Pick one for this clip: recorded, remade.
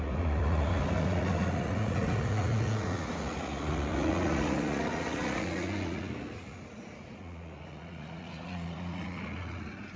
remade